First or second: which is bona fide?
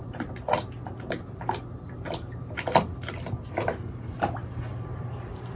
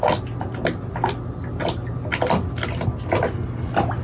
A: second